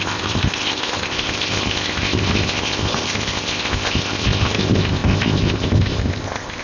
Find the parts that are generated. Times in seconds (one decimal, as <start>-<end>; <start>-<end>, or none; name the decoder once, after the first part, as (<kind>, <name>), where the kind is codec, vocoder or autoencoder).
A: 0.0-6.6 (codec, ZipCodec)